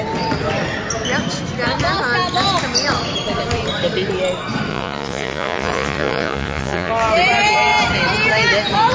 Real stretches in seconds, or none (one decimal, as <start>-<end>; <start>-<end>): 0.0-4.7; 6.9-8.9